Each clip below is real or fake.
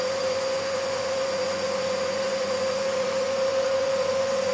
fake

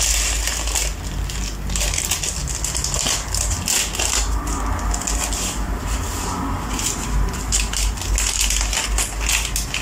real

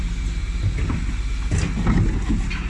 real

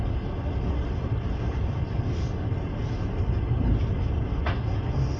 real